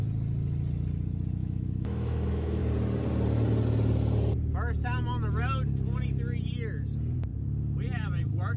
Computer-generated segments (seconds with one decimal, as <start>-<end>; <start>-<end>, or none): 1.4-2.6